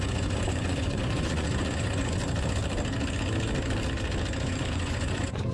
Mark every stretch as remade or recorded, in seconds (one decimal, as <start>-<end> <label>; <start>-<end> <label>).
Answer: 0.0-2.2 remade; 2.2-4.4 recorded; 4.4-5.5 remade